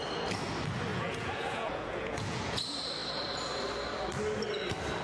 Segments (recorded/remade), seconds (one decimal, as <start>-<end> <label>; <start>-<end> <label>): 0.0-0.9 recorded; 0.9-2.6 remade; 2.6-5.0 recorded